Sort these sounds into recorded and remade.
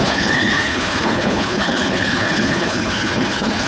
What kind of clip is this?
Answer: remade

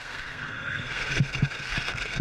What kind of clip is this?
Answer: remade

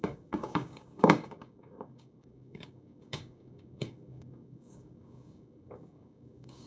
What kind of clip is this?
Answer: remade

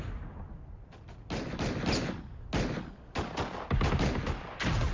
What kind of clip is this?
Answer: recorded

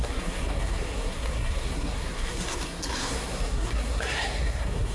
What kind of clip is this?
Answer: remade